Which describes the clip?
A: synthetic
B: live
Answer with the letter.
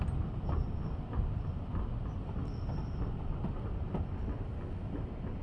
B